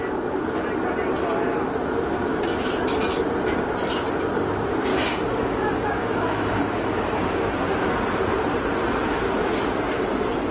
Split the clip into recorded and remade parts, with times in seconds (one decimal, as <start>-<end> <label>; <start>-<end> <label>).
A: 0.0-4.9 recorded; 4.9-7.6 remade; 7.6-10.5 recorded